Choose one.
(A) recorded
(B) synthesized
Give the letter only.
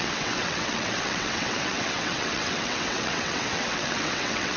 B